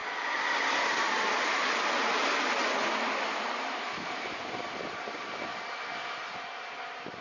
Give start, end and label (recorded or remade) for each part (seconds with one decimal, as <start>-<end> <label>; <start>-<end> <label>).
0.0-0.6 recorded; 0.6-2.6 remade; 2.6-3.5 recorded; 3.5-5.5 remade; 5.5-6.3 recorded; 6.3-7.2 remade